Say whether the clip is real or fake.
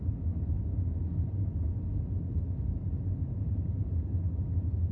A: real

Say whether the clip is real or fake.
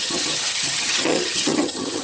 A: fake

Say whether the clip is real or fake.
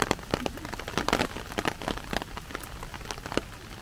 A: real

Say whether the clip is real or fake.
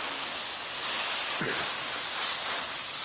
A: real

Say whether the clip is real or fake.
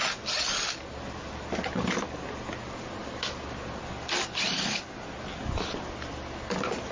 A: real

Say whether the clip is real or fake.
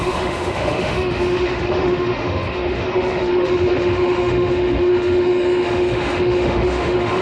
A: fake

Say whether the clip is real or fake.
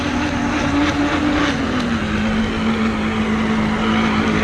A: real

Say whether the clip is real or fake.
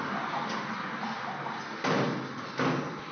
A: real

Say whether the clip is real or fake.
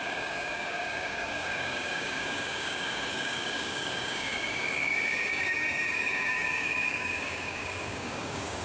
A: fake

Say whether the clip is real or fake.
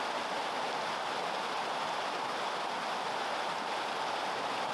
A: real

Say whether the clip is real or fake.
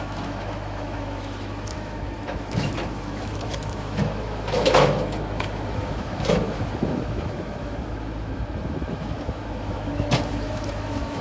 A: fake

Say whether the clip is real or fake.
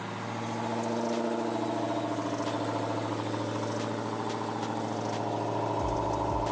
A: real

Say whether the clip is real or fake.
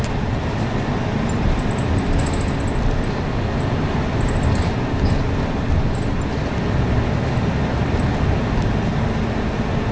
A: real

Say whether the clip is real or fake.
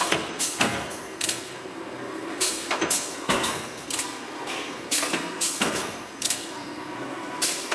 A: fake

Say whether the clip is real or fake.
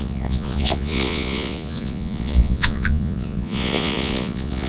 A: fake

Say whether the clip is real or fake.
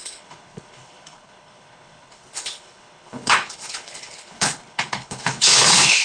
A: fake